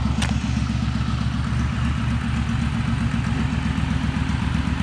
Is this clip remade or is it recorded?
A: recorded